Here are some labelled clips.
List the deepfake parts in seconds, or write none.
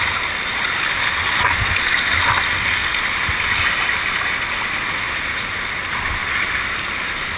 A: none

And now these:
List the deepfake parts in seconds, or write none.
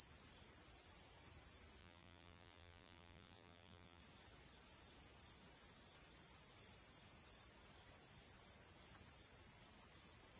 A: 1.8-4.0 (vocoder, BigVGAN v2)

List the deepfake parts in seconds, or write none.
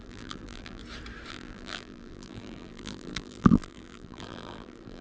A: 0.0-0.8 (vocoder, BigVGAN v2); 1.3-5.0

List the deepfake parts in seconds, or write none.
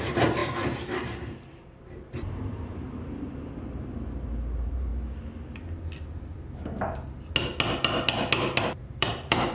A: 0.0-4.9 (vocoder, BigVGAN v2); 8.6-9.5